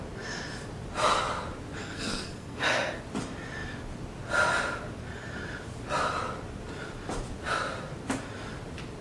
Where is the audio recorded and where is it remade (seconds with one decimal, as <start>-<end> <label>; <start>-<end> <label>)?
0.0-1.8 recorded; 1.8-3.0 remade; 3.0-9.0 recorded

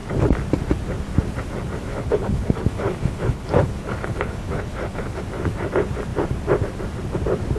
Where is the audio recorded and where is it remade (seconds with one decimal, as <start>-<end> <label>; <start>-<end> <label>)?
0.0-1.9 recorded; 1.9-5.2 remade; 5.2-7.6 recorded

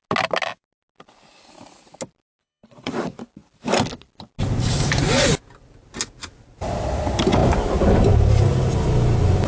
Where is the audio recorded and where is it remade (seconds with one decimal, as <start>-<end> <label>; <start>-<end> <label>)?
0.0-2.4 recorded; 2.4-2.9 remade; 2.9-9.5 recorded

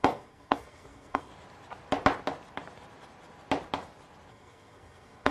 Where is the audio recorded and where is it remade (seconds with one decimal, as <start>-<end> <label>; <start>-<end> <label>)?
0.0-1.3 remade; 1.3-4.3 recorded; 4.3-5.3 remade

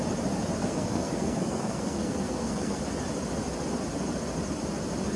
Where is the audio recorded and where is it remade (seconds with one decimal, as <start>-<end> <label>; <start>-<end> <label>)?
0.0-0.6 recorded; 0.6-2.8 remade; 2.8-5.2 recorded

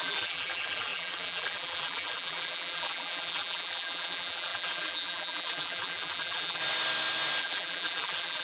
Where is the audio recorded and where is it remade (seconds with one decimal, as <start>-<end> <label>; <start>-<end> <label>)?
0.0-6.6 remade; 6.6-7.4 recorded; 7.4-8.4 remade

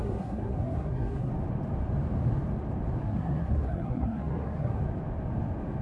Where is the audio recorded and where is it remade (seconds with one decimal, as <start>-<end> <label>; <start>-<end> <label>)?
0.0-1.3 remade; 1.3-3.0 recorded; 3.0-4.8 remade; 4.8-5.8 recorded

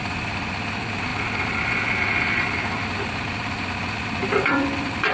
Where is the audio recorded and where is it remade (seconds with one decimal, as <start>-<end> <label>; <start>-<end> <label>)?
0.0-5.1 recorded